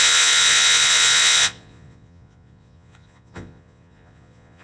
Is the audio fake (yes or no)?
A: yes